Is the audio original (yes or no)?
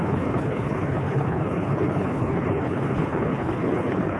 no